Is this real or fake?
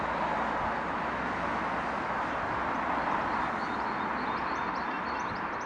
real